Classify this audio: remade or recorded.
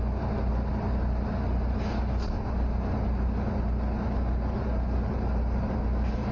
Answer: recorded